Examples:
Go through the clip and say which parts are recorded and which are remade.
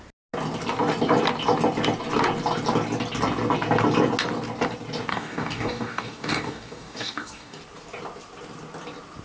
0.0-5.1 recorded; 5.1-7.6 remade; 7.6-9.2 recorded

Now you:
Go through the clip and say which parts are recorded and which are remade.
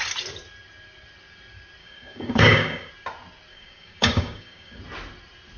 0.0-1.8 recorded; 1.8-2.9 remade; 2.9-3.5 recorded; 3.5-4.8 remade; 4.8-5.6 recorded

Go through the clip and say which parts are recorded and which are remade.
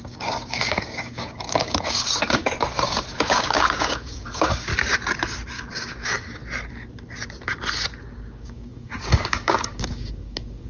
0.0-4.7 remade; 4.7-5.7 recorded; 5.7-6.4 remade; 6.4-8.0 recorded; 8.0-10.7 remade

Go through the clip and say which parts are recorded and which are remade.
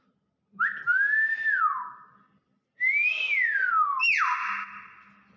0.0-5.4 recorded